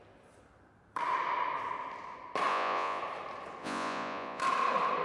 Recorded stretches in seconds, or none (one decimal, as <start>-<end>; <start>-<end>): 0.0-2.5; 3.0-3.6; 4.4-5.0

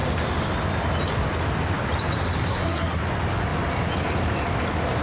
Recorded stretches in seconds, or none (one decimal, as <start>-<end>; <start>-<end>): 0.0-2.5; 3.0-5.0